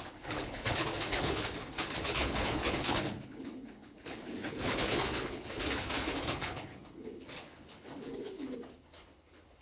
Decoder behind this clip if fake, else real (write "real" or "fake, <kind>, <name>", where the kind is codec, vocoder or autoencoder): fake, codec, HILCodec